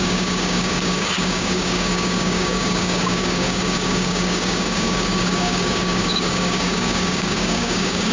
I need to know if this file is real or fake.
fake